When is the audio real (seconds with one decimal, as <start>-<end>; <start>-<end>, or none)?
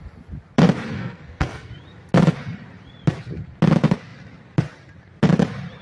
0.0-0.9; 1.7-5.8